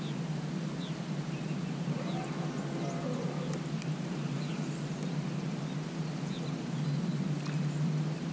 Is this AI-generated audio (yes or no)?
no